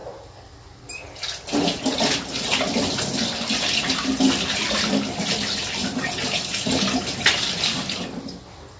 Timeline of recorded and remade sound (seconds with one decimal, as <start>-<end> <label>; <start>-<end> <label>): 0.0-8.8 recorded